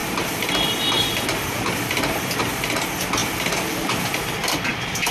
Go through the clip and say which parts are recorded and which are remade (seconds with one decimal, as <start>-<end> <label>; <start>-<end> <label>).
0.0-2.4 remade; 2.4-3.2 recorded; 3.2-5.1 remade